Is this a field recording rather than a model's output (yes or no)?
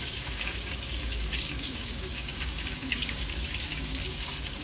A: no